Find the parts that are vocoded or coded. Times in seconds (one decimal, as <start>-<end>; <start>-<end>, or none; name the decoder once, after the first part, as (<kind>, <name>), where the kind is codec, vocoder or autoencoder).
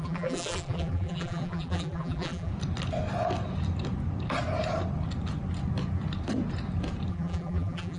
0.0-2.5 (vocoder, BigVGAN v2); 7.1-8.0